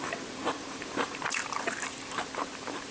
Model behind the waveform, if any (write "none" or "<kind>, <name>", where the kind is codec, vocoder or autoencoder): vocoder, BigVGAN v2